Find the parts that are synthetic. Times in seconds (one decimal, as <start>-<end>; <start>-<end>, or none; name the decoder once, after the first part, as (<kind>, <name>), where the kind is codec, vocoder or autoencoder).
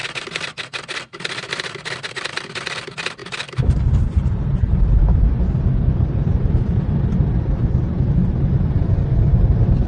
2.1-9.9 (vocoder, BigVGAN v2)